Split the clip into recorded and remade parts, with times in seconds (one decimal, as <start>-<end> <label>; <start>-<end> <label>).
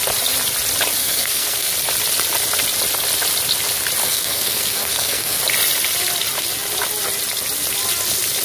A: 0.0-1.0 recorded; 1.0-1.7 remade; 1.7-4.0 recorded; 4.0-5.4 remade; 5.4-8.4 recorded